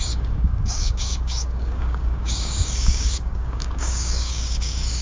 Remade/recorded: remade